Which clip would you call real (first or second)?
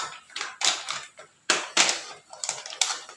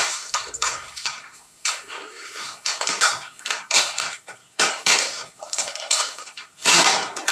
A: first